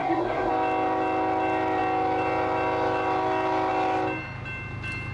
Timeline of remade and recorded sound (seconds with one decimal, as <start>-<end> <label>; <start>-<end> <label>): 0.0-0.5 remade; 0.5-5.1 recorded